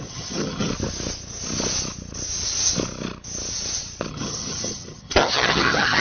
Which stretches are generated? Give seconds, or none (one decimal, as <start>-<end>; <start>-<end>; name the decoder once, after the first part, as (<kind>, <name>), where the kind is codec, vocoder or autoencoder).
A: 0.0-0.7 (vocoder, HiFi-GAN); 4.1-6.0